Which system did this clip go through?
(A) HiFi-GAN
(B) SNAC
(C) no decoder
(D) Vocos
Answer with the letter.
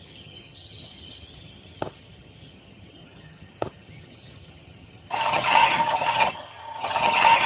A